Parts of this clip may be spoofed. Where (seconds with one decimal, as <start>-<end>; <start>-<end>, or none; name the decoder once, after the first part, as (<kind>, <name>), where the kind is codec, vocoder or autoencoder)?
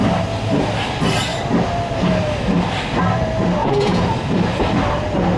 3.6-4.1 (vocoder, Vocos)